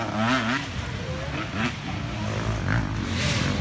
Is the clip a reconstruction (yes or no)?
no